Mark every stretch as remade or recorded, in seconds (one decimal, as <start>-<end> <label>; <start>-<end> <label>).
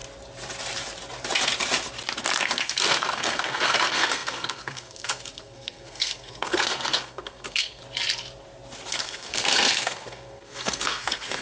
0.0-2.4 recorded; 2.4-7.8 remade; 7.8-8.9 recorded; 8.9-11.4 remade